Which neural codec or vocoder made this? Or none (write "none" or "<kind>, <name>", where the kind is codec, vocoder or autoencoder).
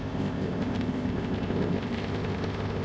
codec, ZipCodec